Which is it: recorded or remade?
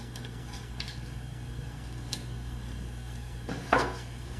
remade